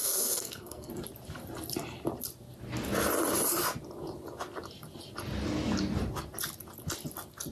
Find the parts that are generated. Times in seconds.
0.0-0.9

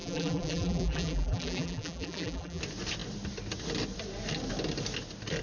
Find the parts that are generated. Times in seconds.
0.0-2.6

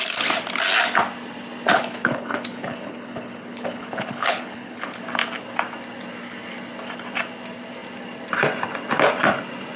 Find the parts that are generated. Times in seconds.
1.7-5.0

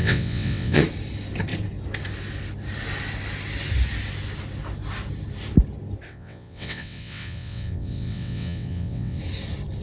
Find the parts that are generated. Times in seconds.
0.0-0.8; 6.1-9.2

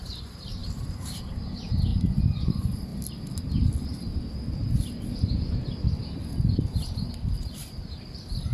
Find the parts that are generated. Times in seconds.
0.0-1.9; 2.5-2.9; 6.4-8.5

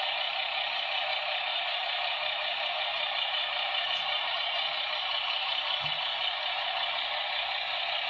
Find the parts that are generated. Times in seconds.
1.5-6.0

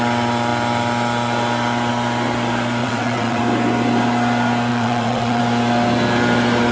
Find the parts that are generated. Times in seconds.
2.8-3.4; 4.7-5.4

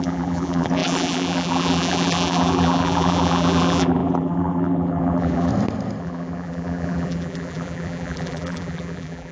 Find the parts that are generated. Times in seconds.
0.0-5.5; 6.0-9.3